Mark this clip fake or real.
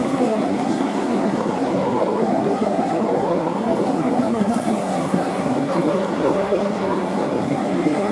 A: fake